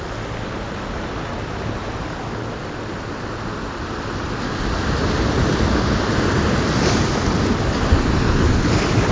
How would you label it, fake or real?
real